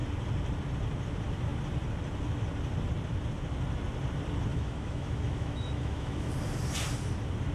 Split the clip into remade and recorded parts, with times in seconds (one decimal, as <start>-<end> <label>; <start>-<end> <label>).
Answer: 0.0-4.5 recorded; 4.5-6.3 remade; 6.3-7.5 recorded